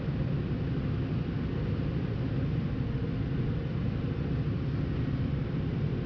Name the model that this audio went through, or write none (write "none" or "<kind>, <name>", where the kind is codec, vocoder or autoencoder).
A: none